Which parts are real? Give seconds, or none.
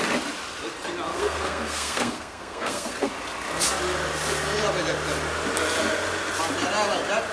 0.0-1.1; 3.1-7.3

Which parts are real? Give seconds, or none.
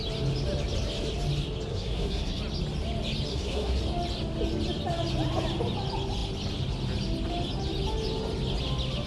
0.0-1.7; 2.4-3.3; 3.8-9.1